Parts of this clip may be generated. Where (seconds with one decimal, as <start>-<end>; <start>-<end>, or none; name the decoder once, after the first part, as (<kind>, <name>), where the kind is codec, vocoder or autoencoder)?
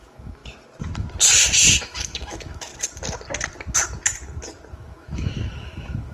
0.0-0.4 (autoencoder, DAC-VAE); 1.8-2.7; 4.7-6.1